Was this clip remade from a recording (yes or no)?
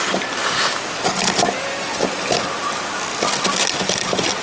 no